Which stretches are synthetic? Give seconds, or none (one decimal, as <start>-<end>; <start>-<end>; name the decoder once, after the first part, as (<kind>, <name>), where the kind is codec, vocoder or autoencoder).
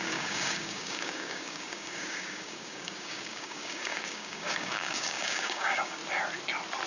0.0-6.0 (codec, DAC)